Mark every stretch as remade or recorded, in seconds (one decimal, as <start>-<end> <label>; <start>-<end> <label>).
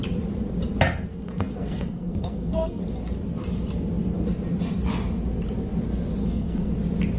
0.0-1.1 recorded; 1.1-2.8 remade; 2.8-6.2 recorded; 6.2-6.7 remade; 6.7-7.2 recorded